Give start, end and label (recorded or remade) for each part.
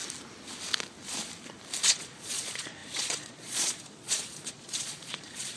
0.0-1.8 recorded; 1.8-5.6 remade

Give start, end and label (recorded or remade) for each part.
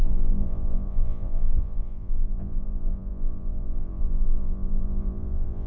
0.0-5.7 remade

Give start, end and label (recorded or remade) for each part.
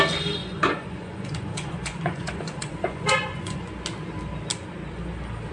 0.0-0.4 recorded; 0.4-3.7 remade; 3.7-5.5 recorded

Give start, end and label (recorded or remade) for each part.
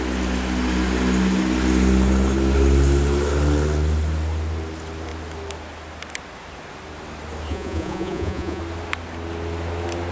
0.0-7.5 recorded; 7.5-8.6 remade; 8.6-10.1 recorded